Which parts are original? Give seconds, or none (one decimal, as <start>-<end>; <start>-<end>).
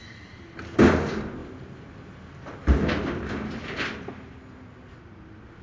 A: 0.0-5.6